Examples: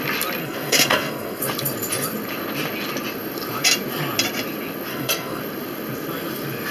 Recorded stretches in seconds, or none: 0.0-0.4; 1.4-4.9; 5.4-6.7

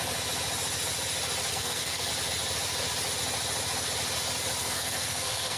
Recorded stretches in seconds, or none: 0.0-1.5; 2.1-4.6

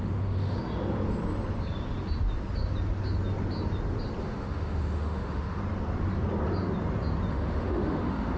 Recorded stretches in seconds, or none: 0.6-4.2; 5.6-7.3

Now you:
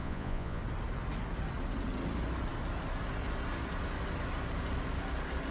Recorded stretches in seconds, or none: 0.6-5.5

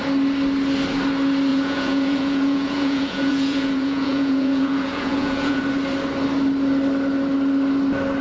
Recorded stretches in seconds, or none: 0.0-1.5; 5.6-8.2

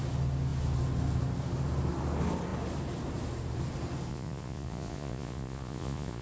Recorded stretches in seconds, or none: 0.0-4.1

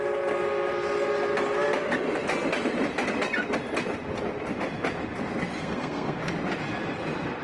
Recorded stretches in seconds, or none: 0.0-5.6; 6.2-7.4